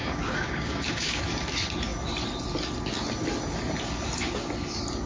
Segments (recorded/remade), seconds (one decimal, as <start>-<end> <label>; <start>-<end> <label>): 0.0-1.2 remade; 1.2-5.1 recorded